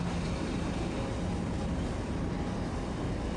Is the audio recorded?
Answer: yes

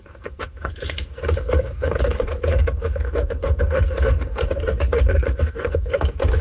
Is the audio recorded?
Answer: no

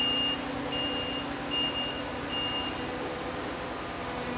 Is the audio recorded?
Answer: yes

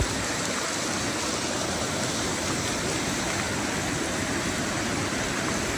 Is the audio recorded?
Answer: yes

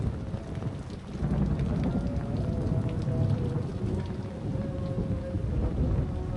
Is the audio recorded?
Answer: yes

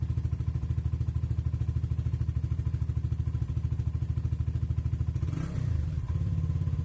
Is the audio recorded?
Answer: no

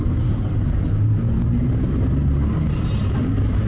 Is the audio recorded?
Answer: no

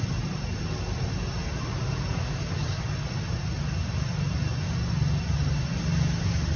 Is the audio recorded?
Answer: yes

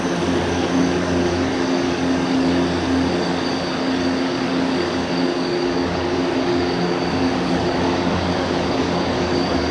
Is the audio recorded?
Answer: no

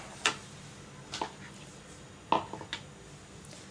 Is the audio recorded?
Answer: yes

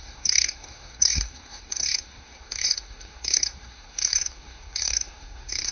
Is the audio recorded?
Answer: no